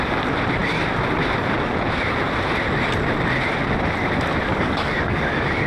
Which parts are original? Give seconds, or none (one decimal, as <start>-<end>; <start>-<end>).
0.0-4.5

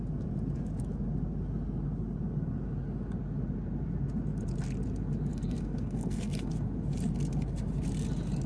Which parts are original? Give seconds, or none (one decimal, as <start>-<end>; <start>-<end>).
0.0-5.3; 6.5-8.5